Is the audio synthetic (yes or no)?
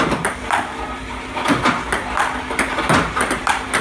no